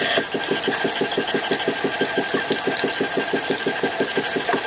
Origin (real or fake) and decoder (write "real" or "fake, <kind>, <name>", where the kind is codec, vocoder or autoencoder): real